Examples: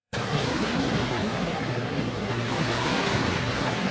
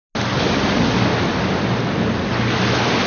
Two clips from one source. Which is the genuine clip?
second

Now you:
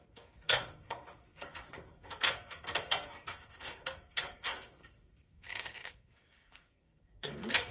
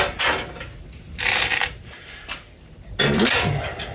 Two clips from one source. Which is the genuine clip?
second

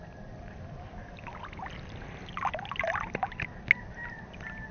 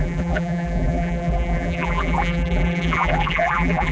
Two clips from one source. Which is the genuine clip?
first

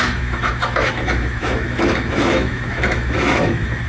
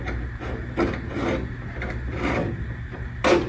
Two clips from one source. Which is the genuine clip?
second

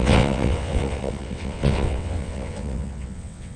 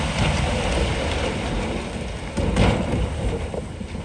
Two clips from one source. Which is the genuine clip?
second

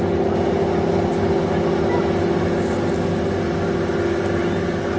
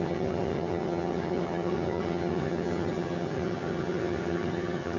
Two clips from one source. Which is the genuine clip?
first